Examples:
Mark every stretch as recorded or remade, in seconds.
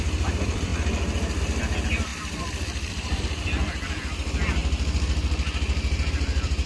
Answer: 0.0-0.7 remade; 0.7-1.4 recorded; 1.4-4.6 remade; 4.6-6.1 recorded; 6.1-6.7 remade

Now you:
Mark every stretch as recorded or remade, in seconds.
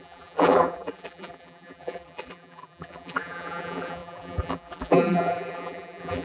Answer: 0.0-6.2 remade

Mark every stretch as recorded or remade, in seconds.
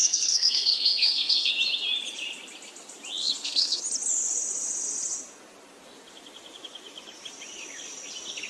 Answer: 0.0-1.5 remade; 1.5-3.2 recorded; 3.2-3.8 remade; 3.8-8.5 recorded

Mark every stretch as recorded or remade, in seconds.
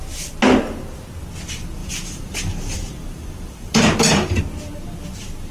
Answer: 0.0-1.8 recorded; 1.8-4.4 remade; 4.4-5.5 recorded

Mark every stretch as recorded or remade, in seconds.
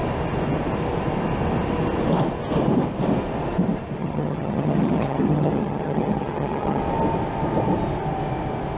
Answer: 0.0-4.0 recorded; 4.0-6.8 remade; 6.8-8.8 recorded